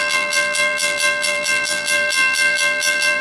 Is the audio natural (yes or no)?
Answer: no